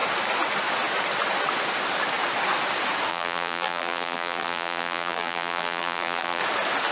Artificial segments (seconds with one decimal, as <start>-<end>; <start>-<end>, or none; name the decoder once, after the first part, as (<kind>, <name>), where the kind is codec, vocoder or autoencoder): 3.1-6.4 (vocoder, BigVGAN v2)